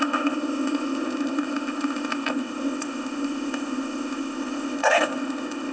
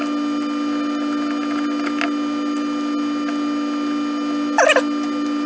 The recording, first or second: second